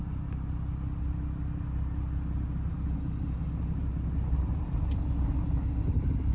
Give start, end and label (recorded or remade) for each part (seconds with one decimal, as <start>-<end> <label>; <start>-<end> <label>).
0.0-3.4 recorded; 3.4-6.3 remade

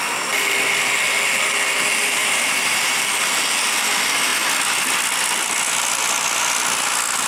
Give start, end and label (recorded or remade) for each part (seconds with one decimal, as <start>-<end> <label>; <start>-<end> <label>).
0.0-2.2 recorded; 2.2-3.0 remade; 3.0-7.3 recorded

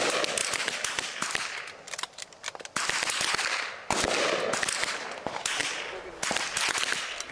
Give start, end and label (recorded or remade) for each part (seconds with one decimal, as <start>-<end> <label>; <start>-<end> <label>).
0.0-7.3 recorded

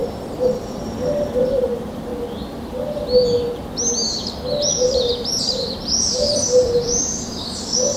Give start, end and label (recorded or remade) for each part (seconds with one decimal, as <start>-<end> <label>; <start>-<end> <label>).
0.0-1.4 recorded; 1.4-2.1 remade; 2.1-5.0 recorded; 5.0-8.0 remade

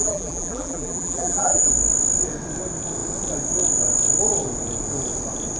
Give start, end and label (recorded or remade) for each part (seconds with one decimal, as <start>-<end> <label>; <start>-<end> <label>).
0.0-1.7 remade; 1.7-5.6 recorded

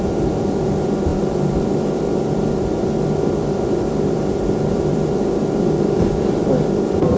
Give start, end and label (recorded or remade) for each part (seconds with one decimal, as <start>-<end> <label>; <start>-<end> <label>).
0.0-7.2 remade

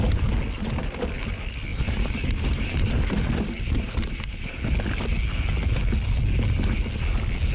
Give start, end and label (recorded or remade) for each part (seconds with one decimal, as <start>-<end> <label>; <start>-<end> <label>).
0.0-1.7 recorded; 1.7-4.6 remade; 4.6-7.5 recorded

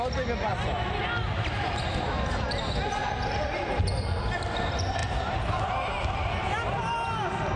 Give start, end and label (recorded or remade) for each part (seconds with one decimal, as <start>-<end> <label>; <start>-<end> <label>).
0.0-3.0 recorded; 3.0-3.7 remade; 3.7-7.6 recorded